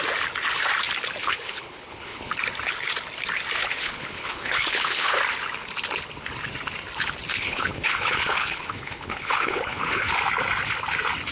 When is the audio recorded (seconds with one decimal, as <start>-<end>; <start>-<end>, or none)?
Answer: 0.0-1.2; 2.3-3.6; 5.2-7.3; 10.1-11.3